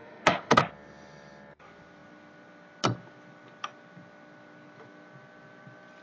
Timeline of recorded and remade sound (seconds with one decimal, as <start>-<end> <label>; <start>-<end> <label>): 0.0-0.6 remade; 0.6-6.0 recorded